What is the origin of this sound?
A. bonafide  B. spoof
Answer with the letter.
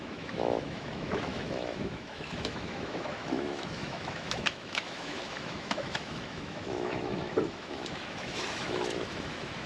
B